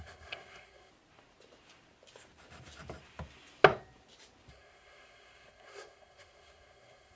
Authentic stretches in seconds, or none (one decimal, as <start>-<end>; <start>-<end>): 0.9-4.5